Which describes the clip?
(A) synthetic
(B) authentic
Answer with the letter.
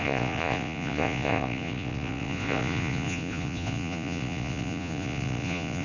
A